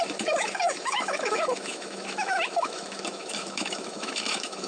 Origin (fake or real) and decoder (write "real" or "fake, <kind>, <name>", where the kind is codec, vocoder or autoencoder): fake, autoencoder, DAC-VAE